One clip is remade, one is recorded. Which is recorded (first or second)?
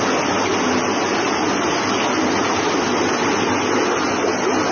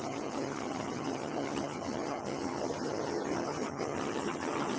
first